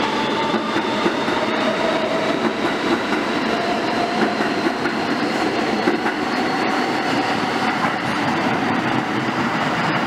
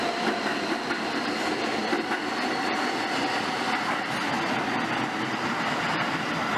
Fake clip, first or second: first